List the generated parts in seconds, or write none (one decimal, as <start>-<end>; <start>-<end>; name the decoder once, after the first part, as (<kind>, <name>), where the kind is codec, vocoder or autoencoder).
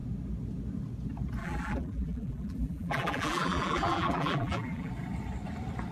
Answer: 1.4-4.9 (vocoder, BigVGAN v2)